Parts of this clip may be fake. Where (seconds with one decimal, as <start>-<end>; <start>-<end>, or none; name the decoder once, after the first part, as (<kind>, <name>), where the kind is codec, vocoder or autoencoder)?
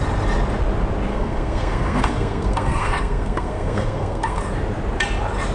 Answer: 1.1-4.4 (codec, SNAC)